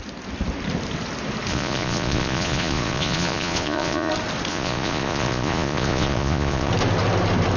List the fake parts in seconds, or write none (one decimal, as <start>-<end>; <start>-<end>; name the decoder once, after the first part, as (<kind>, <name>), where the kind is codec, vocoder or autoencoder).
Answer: 1.5-4.1 (vocoder, Vocos); 4.5-6.7